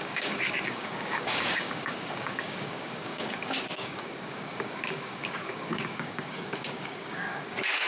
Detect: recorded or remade remade